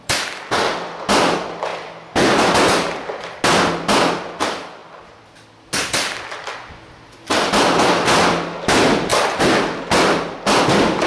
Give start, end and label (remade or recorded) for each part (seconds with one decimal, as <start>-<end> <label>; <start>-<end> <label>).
0.0-11.1 recorded